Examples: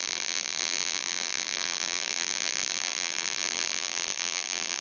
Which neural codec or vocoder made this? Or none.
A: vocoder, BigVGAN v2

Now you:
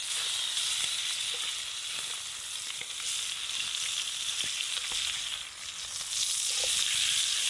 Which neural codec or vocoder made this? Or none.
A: none